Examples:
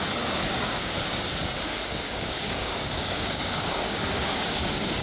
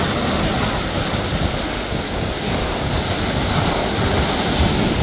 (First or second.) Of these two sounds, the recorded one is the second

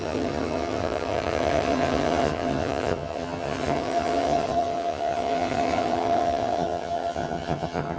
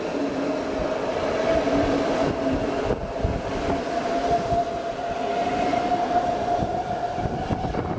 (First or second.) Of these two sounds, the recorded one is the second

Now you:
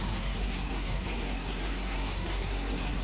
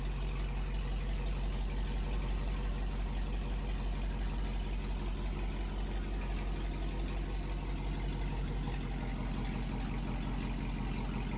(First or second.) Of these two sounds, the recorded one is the second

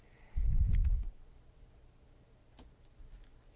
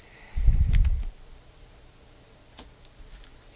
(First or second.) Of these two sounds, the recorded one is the first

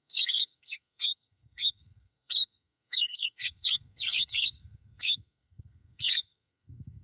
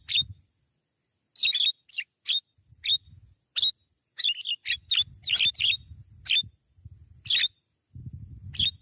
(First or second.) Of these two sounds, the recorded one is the second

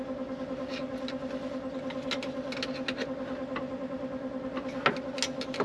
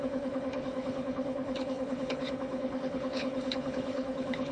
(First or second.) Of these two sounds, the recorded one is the first